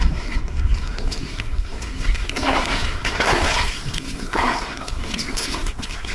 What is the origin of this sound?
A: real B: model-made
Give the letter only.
B